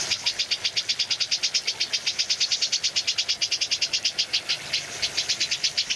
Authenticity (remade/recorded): recorded